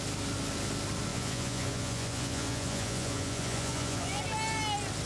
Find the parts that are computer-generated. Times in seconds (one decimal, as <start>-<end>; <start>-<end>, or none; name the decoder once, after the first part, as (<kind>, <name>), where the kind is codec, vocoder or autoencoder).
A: 1.1-4.2 (vocoder, Vocos)